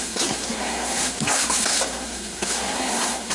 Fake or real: fake